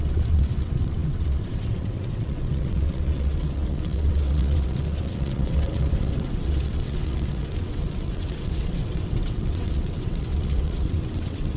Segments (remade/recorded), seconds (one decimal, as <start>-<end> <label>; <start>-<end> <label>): 0.0-11.6 remade